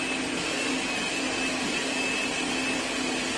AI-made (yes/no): no